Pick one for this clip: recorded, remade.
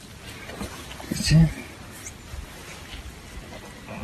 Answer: recorded